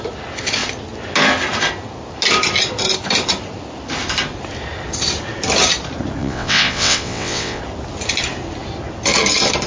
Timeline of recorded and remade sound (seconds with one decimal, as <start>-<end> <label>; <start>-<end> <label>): 0.0-6.2 recorded; 6.2-7.6 remade; 7.6-9.7 recorded